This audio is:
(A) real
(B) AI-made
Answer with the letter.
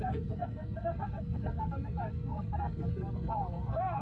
B